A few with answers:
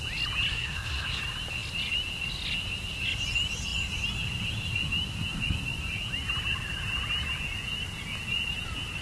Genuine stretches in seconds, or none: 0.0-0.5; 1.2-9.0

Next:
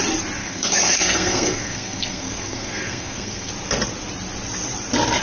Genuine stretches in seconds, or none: 0.0-0.4; 3.5-5.2